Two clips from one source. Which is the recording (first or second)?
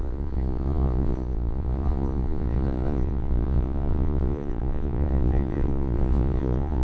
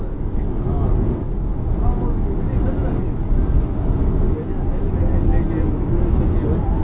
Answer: second